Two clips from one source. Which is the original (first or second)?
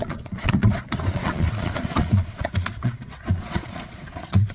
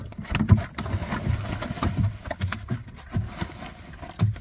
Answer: second